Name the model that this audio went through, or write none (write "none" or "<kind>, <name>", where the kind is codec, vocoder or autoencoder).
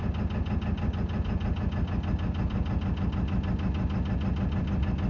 none